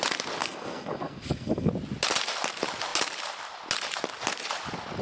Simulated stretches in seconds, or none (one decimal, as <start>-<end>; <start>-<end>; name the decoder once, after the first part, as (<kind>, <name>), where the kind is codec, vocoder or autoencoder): 0.4-1.7 (codec, SNAC)